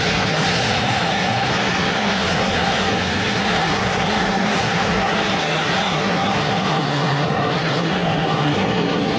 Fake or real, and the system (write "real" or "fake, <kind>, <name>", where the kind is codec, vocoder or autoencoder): fake, codec, SNAC